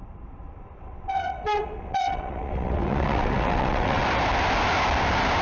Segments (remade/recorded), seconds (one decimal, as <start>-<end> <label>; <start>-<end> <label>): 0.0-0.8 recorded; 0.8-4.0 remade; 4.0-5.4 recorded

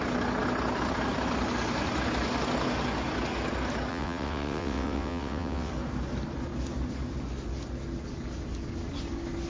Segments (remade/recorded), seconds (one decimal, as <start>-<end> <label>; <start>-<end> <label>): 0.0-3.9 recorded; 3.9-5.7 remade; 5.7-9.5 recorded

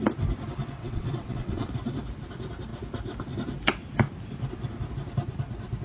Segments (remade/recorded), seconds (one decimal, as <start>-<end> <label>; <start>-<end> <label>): 0.0-0.8 recorded; 0.8-1.7 remade; 1.7-5.8 recorded

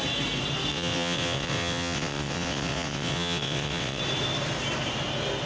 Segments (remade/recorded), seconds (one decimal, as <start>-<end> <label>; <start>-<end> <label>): 0.0-0.7 recorded; 0.7-4.0 remade; 4.0-5.5 recorded

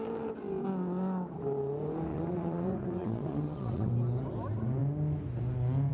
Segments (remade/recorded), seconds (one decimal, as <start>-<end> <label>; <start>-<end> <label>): 0.0-2.1 recorded; 2.1-3.9 remade; 3.9-5.9 recorded